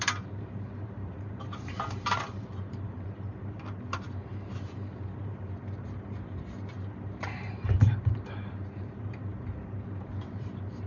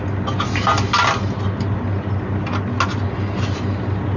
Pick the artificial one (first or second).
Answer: first